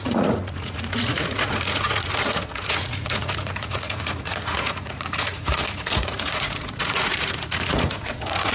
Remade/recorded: remade